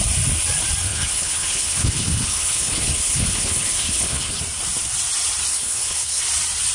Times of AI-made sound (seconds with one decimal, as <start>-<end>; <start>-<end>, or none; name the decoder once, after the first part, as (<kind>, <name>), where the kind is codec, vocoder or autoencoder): 0.8-4.4 (codec, HILCodec); 5.5-6.2